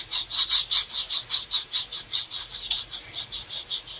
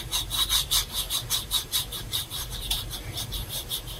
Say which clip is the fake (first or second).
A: second